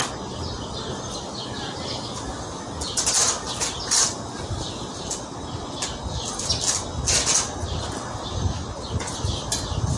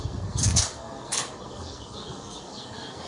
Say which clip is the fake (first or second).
second